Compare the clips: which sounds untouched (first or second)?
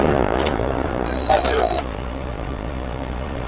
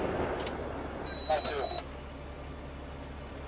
second